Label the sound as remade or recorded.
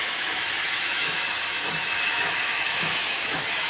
remade